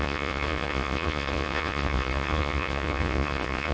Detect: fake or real fake